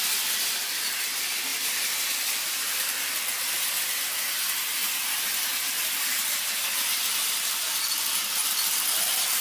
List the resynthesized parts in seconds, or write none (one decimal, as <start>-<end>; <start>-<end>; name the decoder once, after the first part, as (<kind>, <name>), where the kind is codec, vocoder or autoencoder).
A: none